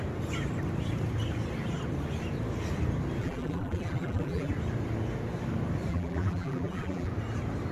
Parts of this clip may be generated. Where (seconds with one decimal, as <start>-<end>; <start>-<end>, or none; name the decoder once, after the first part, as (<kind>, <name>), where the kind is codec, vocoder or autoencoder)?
3.2-4.5 (vocoder, BigVGAN v2); 5.9-7.1